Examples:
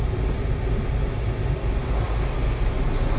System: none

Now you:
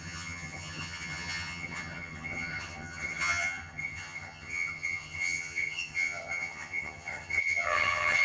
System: vocoder, HiFi-GAN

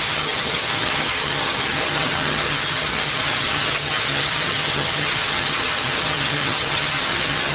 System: vocoder, HiFi-GAN